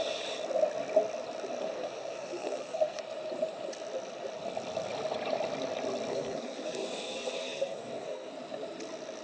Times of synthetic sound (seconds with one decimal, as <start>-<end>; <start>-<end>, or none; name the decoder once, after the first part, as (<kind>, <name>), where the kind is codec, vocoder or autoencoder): 1.6-3.0 (codec, SNAC); 6.1-8.3